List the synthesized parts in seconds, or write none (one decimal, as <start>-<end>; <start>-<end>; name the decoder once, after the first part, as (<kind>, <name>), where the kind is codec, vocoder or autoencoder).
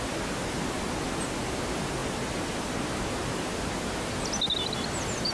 none